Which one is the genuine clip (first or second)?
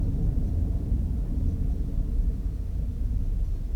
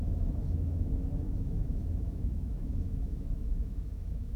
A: first